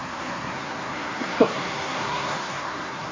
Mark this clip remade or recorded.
remade